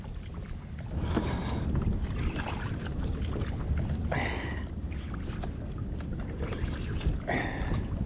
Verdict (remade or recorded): recorded